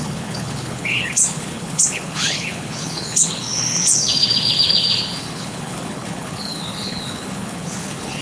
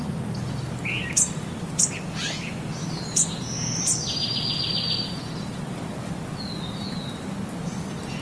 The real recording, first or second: second